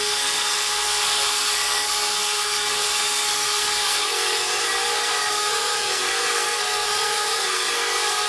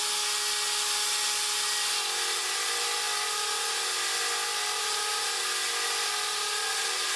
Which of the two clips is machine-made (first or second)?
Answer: first